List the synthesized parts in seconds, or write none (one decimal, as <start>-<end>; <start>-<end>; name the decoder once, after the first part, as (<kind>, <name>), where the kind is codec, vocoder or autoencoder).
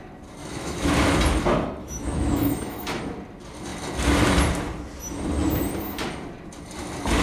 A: 0.4-0.9 (autoencoder, DAC-VAE); 1.8-3.0